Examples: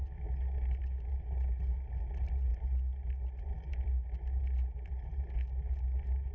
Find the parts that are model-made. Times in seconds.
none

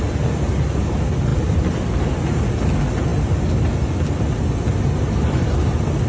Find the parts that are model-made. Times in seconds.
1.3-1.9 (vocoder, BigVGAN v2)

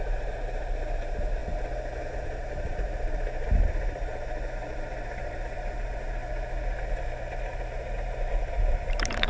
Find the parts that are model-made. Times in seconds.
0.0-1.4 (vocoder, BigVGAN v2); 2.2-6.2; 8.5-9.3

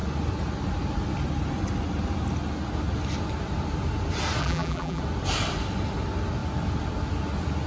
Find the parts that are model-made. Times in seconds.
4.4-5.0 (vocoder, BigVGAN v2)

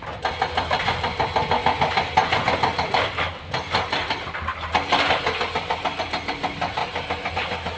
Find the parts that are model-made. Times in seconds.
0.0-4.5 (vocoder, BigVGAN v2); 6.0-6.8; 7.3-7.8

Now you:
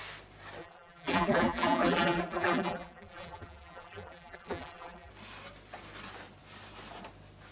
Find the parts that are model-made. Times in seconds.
0.6-5.1 (vocoder, BigVGAN v2)